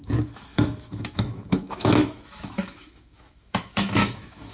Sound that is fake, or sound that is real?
fake